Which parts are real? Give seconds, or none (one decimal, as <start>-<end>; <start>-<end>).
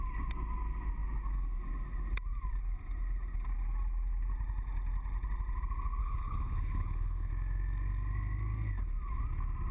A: 0.0-6.0; 7.3-9.7